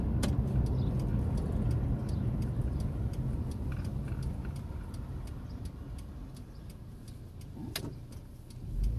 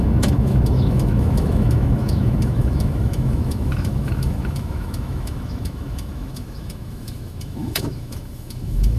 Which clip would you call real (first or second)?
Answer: first